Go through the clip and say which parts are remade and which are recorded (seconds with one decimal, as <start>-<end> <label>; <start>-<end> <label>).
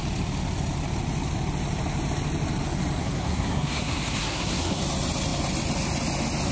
0.0-3.0 recorded; 3.0-4.8 remade; 4.8-6.5 recorded